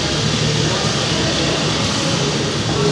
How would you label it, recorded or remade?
recorded